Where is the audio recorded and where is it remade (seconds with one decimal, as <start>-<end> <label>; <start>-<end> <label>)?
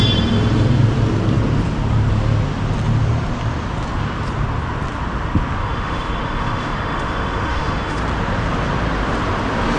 0.0-5.6 recorded; 5.6-8.0 remade; 8.0-9.8 recorded